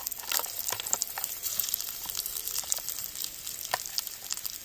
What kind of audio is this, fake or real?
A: fake